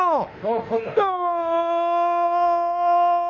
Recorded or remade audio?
remade